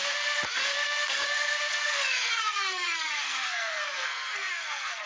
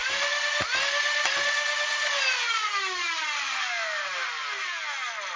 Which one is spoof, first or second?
first